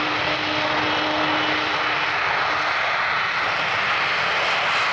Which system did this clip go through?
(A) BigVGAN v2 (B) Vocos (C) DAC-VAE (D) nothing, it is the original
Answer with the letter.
D